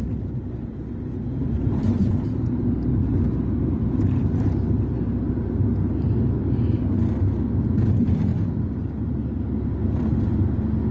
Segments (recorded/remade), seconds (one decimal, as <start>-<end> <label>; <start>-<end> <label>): 0.0-10.9 recorded